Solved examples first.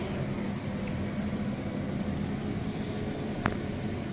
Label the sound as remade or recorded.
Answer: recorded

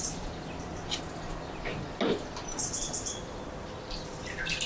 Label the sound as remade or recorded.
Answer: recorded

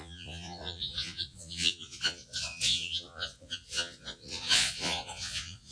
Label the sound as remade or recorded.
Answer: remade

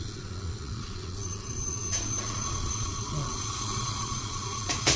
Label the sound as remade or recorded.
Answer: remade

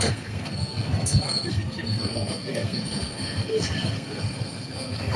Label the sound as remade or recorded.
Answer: remade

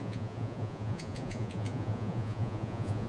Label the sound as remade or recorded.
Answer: remade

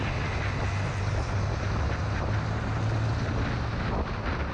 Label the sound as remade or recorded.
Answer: recorded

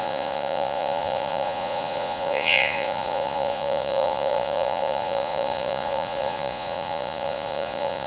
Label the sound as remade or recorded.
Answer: remade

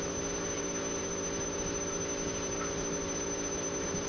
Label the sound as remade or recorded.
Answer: remade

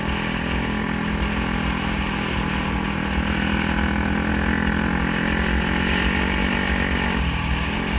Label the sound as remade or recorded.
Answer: recorded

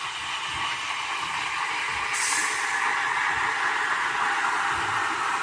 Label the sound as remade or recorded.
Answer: remade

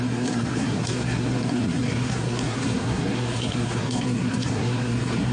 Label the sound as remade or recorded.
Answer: remade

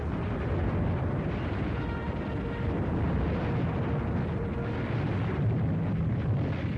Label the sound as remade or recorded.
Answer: recorded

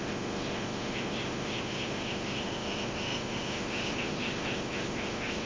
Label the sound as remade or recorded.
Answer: remade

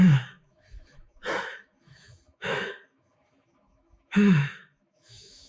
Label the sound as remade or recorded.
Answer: remade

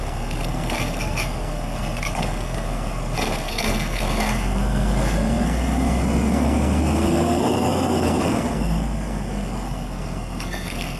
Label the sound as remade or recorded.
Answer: remade